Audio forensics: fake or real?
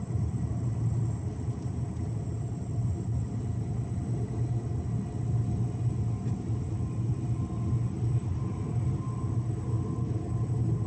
real